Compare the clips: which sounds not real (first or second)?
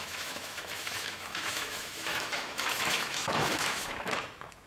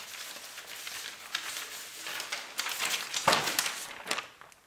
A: first